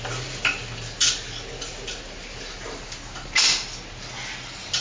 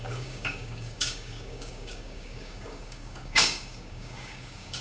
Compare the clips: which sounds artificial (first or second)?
second